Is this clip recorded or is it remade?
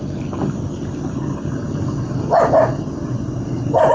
recorded